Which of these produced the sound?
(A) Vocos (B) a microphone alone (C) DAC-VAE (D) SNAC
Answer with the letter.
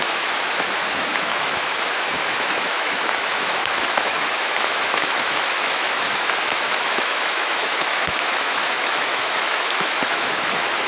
C